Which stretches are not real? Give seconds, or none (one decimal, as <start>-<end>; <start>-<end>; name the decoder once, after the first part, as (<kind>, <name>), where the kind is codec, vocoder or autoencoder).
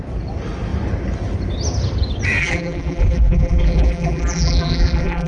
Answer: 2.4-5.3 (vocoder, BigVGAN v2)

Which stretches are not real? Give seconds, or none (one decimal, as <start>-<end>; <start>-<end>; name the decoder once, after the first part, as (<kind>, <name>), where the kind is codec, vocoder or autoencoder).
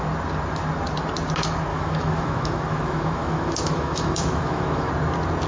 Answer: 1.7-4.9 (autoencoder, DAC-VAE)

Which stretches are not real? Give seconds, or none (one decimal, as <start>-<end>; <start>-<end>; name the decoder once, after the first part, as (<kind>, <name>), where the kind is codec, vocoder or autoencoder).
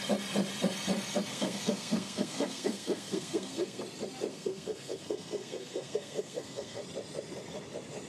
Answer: 1.3-3.8 (codec, SNAC); 4.3-6.8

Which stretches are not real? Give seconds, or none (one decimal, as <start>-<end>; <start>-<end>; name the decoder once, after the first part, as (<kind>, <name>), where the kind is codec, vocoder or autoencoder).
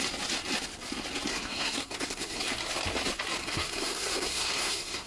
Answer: 1.3-2.4 (codec, SNAC); 3.4-5.1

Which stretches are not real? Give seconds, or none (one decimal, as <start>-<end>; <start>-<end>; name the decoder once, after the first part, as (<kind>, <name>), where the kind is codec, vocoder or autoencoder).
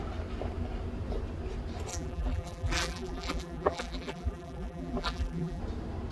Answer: 1.9-5.6 (vocoder, BigVGAN v2)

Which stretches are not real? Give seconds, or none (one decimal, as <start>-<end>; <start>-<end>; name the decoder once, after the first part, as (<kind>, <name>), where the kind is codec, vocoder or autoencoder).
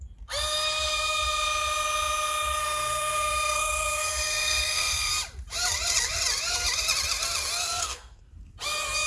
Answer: 2.6-5.1 (codec, SNAC); 7.8-8.3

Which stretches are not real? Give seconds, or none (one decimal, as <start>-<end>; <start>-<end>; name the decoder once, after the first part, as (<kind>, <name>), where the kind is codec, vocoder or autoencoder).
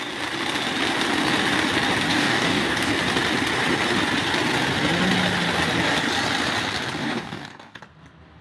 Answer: 2.1-2.9 (codec, DAC); 7.0-7.8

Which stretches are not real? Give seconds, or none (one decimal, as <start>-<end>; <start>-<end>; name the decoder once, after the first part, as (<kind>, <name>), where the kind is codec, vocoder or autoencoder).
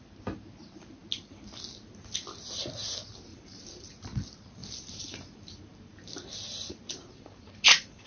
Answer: 3.3-3.9 (vocoder, BigVGAN v2); 4.6-8.1